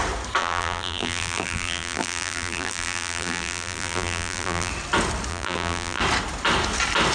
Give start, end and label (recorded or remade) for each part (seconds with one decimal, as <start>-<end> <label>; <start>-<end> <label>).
0.0-0.4 recorded; 0.4-4.7 remade; 4.7-5.3 recorded; 5.3-6.0 remade; 6.0-7.1 recorded